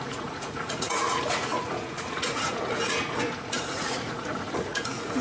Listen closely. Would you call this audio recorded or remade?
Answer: remade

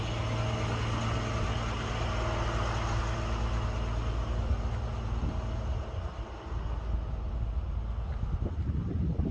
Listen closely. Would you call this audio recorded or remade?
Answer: recorded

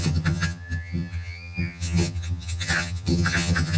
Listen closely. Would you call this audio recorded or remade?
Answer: remade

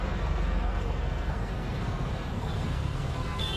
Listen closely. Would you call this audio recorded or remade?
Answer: remade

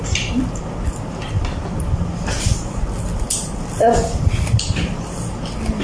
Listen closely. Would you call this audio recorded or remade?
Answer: recorded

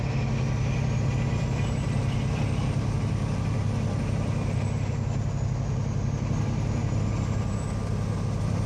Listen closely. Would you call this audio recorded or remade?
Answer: recorded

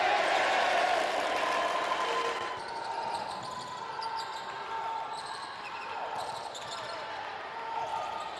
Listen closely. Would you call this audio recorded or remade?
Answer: recorded